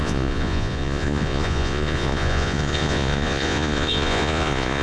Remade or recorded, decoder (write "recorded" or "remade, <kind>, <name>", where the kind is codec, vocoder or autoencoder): remade, vocoder, Vocos